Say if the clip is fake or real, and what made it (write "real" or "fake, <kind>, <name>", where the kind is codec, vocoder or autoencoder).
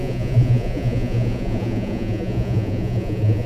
fake, vocoder, Vocos